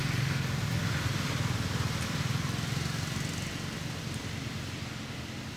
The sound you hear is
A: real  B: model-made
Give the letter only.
A